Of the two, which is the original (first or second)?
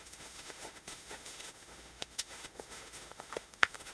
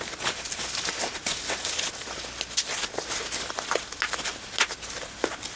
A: second